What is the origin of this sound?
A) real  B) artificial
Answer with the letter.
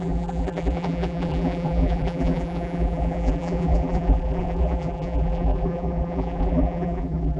B